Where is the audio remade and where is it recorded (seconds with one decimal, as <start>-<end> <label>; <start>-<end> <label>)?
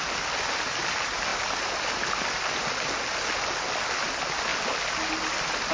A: 0.0-5.7 recorded